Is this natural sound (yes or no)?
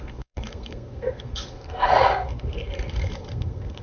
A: no